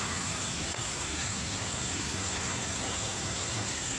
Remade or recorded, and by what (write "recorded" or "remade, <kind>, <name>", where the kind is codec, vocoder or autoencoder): remade, codec, SNAC